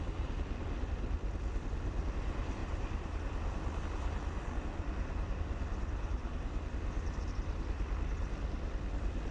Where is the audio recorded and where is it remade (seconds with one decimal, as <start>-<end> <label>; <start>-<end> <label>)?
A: 0.0-9.3 recorded